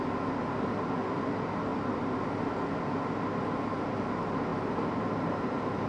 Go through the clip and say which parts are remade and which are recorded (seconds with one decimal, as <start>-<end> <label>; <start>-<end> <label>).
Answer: 0.0-4.5 recorded; 4.5-5.5 remade; 5.5-5.9 recorded